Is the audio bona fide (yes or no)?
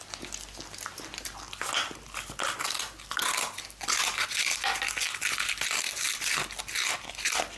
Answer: yes